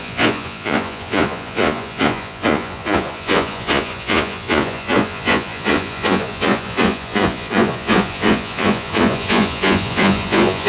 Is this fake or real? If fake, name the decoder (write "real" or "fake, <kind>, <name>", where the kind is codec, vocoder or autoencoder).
fake, vocoder, Vocos